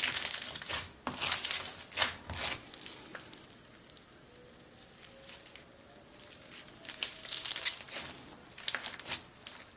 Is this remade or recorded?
recorded